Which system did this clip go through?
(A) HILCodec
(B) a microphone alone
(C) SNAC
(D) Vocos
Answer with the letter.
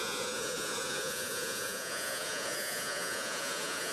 D